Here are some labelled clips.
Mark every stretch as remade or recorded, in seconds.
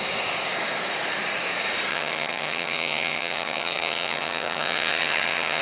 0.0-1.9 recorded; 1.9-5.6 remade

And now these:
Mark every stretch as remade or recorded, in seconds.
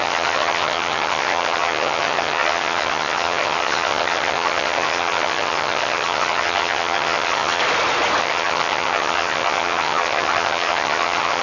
0.0-7.6 remade; 7.6-8.2 recorded; 8.2-11.4 remade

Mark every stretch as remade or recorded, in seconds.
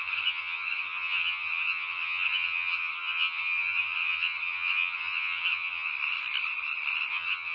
0.0-5.9 remade; 5.9-7.1 recorded; 7.1-7.5 remade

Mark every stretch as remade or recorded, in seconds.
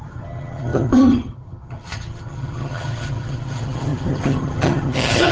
0.0-5.3 remade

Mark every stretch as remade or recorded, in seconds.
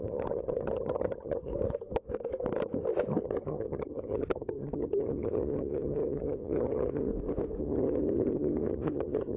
0.0-1.5 remade; 1.5-3.2 recorded; 3.2-7.1 remade; 7.1-7.6 recorded; 7.6-9.4 remade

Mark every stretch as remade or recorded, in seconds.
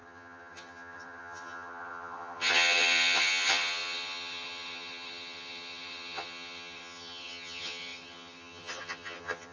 0.0-9.5 remade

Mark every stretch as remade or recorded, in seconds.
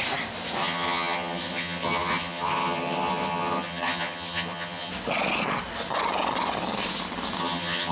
0.0-0.6 recorded; 0.6-4.9 remade; 4.9-7.4 recorded; 7.4-7.9 remade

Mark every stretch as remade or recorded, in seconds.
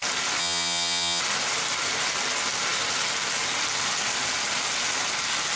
0.0-0.4 recorded; 0.4-1.2 remade; 1.2-5.6 recorded